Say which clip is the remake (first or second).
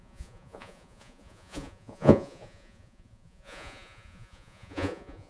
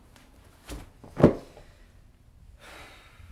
first